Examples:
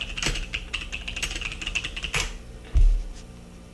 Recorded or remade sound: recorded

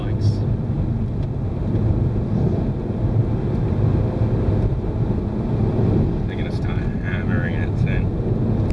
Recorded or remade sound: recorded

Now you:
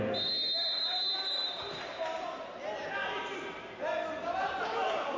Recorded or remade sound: recorded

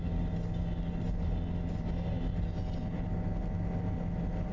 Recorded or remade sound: recorded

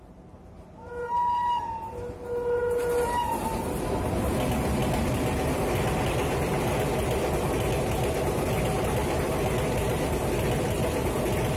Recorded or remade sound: recorded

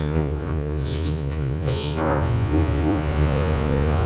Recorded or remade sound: remade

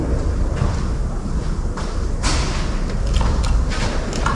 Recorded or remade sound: recorded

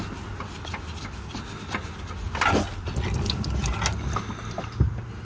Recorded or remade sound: recorded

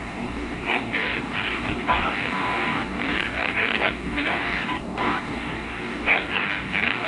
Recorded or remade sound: remade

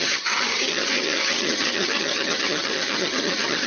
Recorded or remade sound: remade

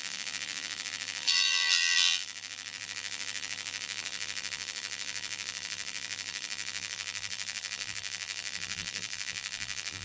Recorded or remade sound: remade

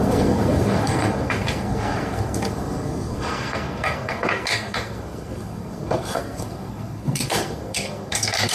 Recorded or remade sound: remade